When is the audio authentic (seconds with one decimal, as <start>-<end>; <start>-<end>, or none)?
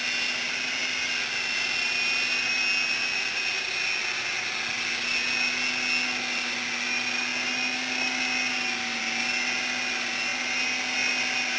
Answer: 0.0-11.6